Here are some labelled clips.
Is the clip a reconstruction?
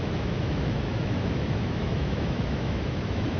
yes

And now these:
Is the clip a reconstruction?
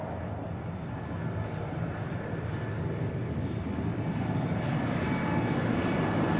no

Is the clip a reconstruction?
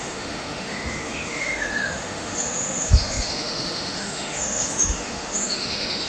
yes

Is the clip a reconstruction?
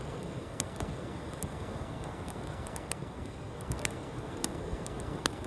yes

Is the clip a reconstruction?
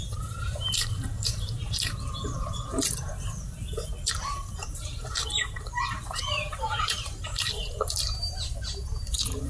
yes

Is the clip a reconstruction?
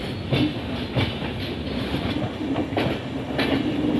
no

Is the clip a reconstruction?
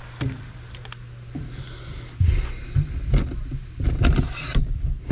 no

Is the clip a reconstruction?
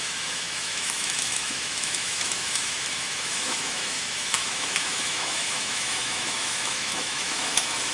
yes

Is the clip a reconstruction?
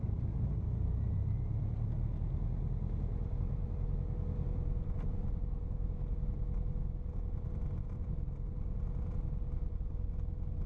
no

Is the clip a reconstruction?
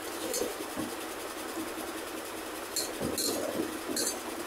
no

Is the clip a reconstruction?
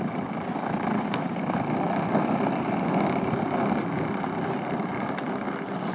no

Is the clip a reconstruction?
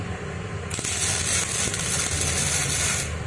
no